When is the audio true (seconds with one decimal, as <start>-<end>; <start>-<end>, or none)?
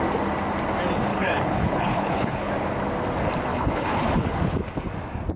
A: 0.0-1.1; 2.5-3.5; 4.8-5.4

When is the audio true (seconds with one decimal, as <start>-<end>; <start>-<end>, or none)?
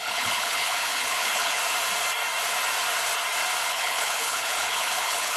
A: 1.6-3.6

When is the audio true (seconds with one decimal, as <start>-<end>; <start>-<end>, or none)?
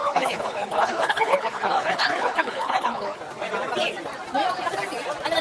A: 3.2-5.4